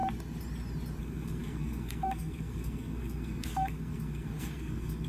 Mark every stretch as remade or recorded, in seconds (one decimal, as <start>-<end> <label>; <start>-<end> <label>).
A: 0.0-1.0 recorded; 1.0-5.1 remade